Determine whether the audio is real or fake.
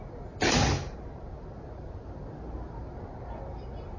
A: real